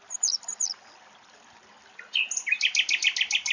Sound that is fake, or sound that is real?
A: real